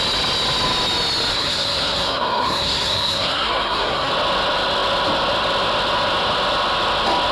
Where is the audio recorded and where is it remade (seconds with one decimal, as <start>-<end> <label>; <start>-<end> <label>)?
0.0-1.3 recorded; 1.3-4.1 remade; 4.1-7.3 recorded